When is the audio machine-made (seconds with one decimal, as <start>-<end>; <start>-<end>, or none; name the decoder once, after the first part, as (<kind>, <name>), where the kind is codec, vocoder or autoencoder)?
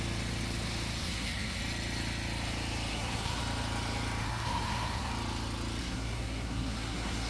1.0-1.6 (codec, SNAC); 2.9-3.4; 4.2-5.1; 5.8-7.3